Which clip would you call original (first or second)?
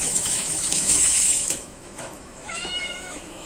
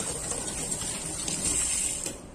second